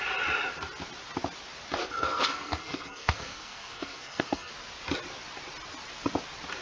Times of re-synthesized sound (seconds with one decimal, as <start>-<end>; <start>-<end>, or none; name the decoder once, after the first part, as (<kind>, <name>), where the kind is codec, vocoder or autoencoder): 1.8-4.5 (codec, SNAC)